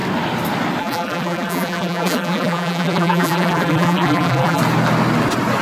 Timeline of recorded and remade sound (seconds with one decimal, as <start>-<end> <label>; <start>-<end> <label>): 0.0-0.8 recorded; 0.8-4.6 remade; 4.6-5.6 recorded